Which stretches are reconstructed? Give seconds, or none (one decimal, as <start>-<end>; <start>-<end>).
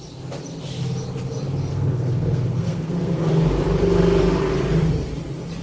1.7-3.3